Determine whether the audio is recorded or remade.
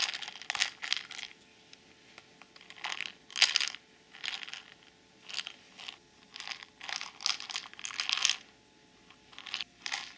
recorded